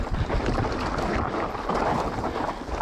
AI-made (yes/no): no